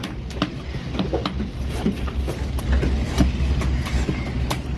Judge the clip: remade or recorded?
recorded